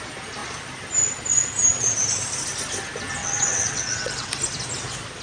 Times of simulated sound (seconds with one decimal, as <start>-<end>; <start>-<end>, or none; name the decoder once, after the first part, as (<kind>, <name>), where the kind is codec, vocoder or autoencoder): 3.2-4.3 (vocoder, WaveNeXt)